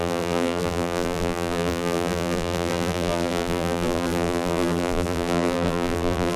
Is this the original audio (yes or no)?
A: no